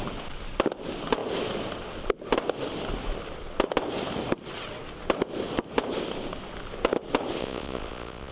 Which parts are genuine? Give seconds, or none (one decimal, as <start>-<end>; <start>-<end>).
0.0-7.4